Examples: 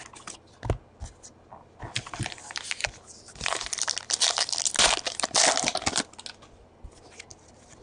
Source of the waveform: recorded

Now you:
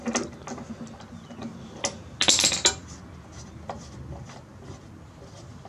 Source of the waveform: recorded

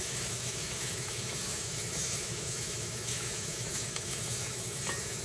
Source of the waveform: remade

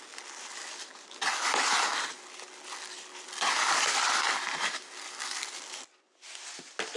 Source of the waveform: recorded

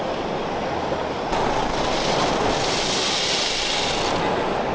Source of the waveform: recorded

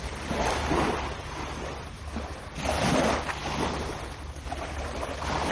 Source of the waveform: recorded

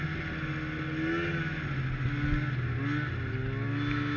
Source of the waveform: recorded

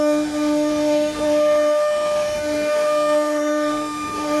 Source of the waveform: remade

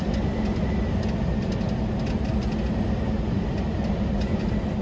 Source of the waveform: recorded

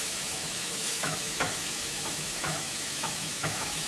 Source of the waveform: remade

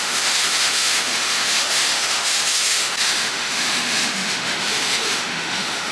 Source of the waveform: remade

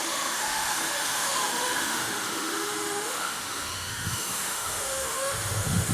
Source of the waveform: remade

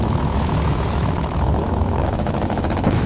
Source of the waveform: remade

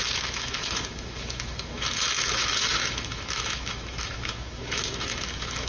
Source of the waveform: remade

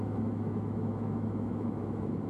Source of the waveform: remade